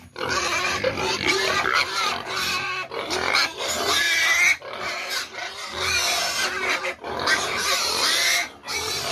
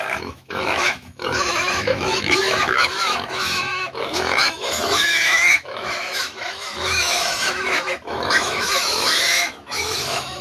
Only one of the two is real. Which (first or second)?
first